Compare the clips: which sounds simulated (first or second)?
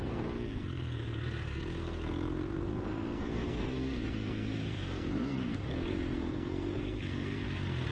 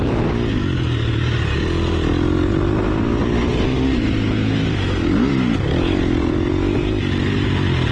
first